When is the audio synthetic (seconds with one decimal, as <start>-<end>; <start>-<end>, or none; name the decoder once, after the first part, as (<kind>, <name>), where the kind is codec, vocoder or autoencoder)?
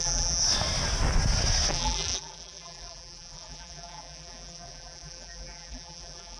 0.0-0.4 (vocoder, BigVGAN v2); 1.7-6.4